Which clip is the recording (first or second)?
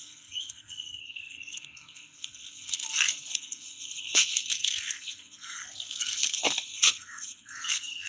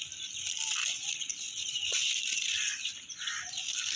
second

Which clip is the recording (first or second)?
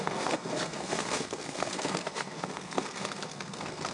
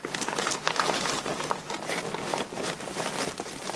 second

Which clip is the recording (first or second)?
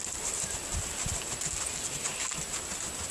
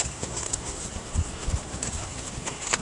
first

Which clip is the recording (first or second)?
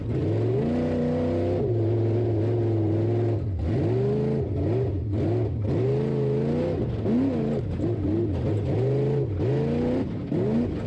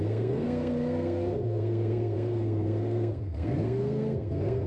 first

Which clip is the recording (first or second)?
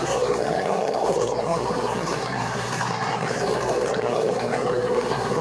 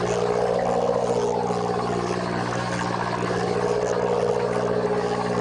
second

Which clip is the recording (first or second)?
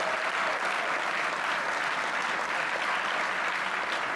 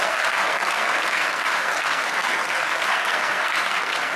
first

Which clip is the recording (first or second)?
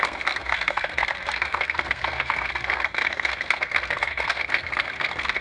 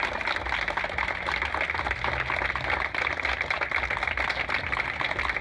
second